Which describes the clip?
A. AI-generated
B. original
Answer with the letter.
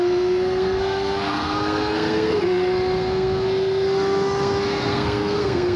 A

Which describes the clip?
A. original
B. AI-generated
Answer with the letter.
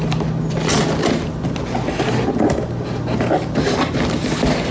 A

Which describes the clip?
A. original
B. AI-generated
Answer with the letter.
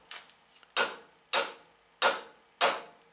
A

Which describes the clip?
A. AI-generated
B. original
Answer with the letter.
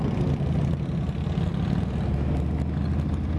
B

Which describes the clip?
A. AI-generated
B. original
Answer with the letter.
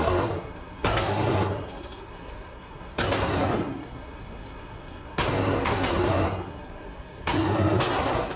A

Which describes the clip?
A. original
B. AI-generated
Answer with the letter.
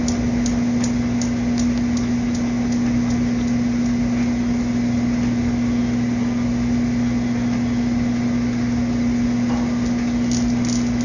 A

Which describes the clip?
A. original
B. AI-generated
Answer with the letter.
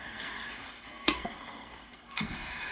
B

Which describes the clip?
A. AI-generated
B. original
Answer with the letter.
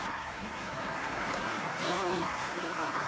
A